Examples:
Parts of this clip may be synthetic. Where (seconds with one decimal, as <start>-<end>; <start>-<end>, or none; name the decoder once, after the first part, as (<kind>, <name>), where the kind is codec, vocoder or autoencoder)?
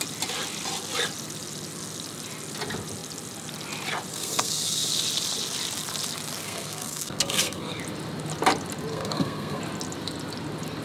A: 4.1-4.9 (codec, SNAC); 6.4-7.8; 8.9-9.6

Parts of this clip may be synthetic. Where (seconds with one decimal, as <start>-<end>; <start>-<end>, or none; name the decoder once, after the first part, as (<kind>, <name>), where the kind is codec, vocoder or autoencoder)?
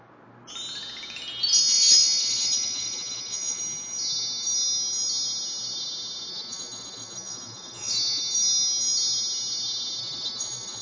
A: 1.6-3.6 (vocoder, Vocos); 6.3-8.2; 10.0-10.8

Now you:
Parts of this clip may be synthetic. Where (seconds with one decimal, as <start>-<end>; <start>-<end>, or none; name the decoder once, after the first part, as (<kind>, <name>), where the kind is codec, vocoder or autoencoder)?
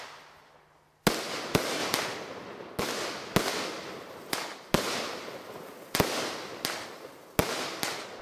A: 1.8-2.8 (vocoder, BigVGAN v2)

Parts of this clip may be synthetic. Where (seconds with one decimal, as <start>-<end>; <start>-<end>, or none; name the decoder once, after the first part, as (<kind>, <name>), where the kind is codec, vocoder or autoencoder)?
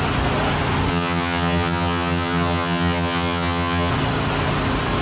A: 0.9-3.9 (vocoder, HiFi-GAN)